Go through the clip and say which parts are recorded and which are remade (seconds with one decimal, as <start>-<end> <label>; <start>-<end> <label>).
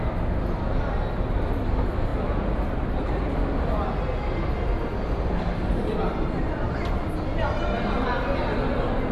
0.0-9.1 recorded